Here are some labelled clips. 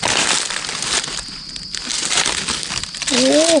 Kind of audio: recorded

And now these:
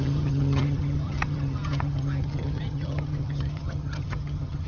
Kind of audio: remade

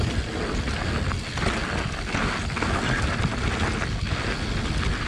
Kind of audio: recorded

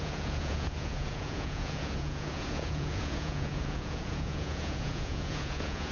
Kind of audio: remade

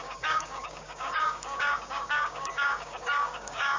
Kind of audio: remade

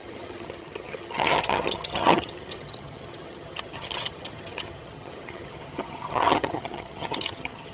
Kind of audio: remade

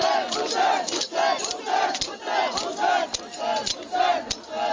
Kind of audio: recorded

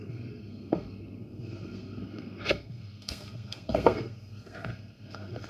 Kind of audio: remade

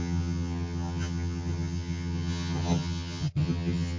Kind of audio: remade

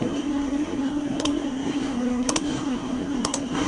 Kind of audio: remade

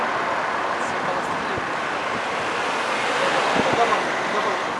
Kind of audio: recorded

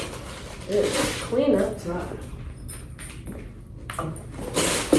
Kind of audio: recorded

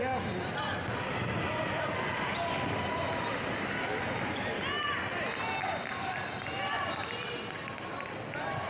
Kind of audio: recorded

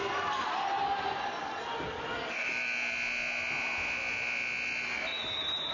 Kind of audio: recorded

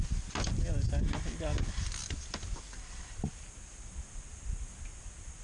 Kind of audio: recorded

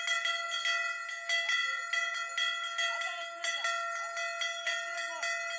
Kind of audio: recorded